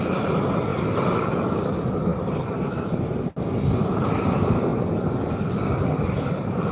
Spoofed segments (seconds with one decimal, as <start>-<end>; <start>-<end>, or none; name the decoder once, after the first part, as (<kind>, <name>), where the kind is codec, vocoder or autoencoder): 0.0-4.7 (vocoder, BigVGAN v2); 5.8-6.7